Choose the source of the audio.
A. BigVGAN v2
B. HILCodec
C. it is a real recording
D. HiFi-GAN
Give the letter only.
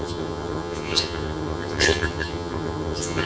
D